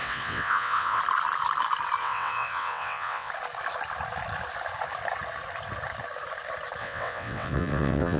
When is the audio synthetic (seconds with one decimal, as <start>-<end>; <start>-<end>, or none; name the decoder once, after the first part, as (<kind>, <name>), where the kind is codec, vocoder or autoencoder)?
0.0-1.0 (vocoder, WaveNeXt); 2.0-3.3; 6.8-8.2